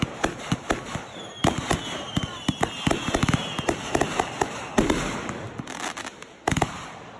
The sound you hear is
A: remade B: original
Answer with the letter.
B